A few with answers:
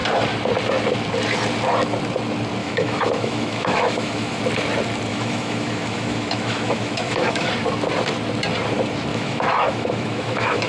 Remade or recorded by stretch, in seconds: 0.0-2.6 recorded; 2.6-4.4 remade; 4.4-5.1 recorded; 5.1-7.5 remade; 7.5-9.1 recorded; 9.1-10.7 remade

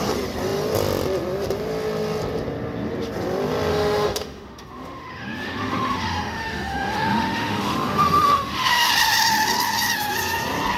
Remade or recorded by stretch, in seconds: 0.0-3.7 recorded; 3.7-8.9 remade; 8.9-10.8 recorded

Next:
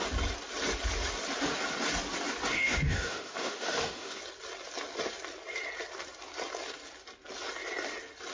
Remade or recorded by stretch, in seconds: 0.0-2.5 recorded; 2.5-4.2 remade; 4.2-8.3 recorded

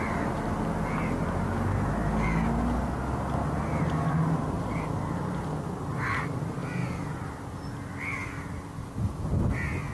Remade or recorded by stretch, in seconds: 0.0-9.9 recorded